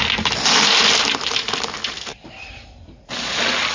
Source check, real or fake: real